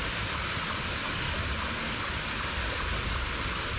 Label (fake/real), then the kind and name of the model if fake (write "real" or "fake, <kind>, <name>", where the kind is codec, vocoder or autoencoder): real